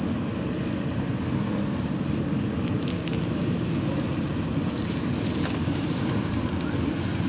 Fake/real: real